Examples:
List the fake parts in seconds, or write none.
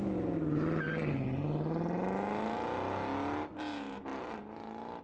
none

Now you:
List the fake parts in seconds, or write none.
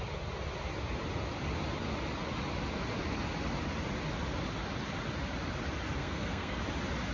6.0-6.6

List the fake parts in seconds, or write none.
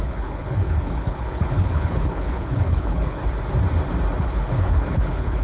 0.0-3.2; 4.2-5.4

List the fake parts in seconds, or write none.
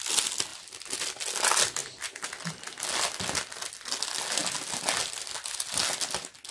none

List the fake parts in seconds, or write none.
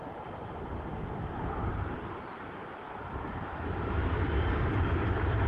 0.0-4.0; 4.7-5.5